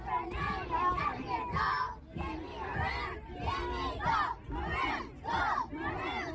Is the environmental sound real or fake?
real